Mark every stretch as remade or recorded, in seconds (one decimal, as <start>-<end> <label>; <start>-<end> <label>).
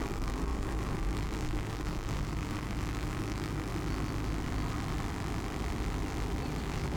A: 0.0-3.7 remade; 3.7-6.6 recorded; 6.6-7.0 remade